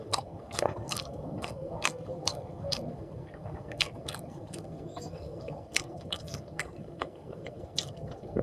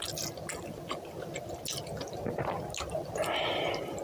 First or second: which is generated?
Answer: first